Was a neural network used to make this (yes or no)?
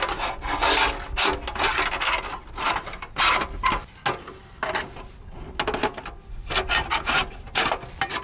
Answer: no